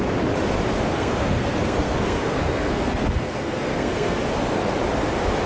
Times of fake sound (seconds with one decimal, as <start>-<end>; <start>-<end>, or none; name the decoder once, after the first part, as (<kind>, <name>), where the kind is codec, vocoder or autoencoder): 0.9-4.2 (codec, SNAC)

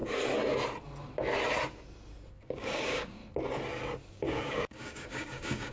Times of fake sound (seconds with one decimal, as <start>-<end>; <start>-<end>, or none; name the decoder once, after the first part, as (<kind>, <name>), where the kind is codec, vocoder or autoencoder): 2.3-3.2 (codec, DAC); 4.1-5.7

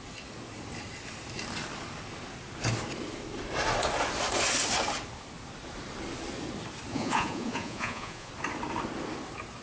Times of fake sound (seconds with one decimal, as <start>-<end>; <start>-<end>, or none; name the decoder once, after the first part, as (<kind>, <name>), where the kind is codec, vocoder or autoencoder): 6.9-8.3 (vocoder, Vocos)

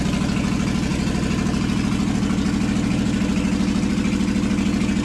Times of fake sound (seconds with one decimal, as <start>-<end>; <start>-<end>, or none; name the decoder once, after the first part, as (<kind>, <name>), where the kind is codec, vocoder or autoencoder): none

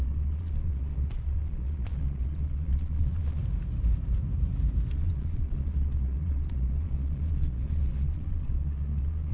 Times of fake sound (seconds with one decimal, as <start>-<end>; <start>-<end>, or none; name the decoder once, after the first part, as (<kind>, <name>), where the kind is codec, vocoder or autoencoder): 0.0-3.4 (vocoder, Vocos); 4.9-9.3

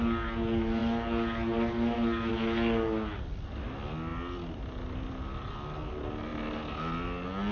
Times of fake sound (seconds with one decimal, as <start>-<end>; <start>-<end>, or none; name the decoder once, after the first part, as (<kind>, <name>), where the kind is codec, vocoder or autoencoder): none

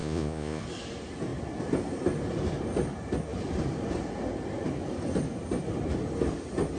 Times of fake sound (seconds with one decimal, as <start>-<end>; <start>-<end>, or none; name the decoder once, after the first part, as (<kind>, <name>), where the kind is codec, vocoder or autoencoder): 0.0-0.6 (vocoder, Vocos)

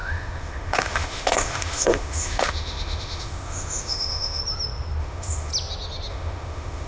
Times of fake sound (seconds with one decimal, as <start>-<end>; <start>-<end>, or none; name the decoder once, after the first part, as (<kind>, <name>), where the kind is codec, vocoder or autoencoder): 0.0-4.4 (autoencoder, DAC-VAE); 5.0-5.5; 6.1-6.9